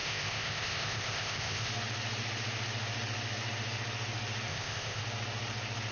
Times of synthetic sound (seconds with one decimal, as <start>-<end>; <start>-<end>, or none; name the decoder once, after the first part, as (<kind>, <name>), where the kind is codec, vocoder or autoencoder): 0.0-1.7 (codec, ZipCodec); 4.5-5.0